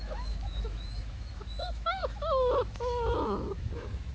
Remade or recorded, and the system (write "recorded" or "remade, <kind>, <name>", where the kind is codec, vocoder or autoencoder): remade, autoencoder, DAC-VAE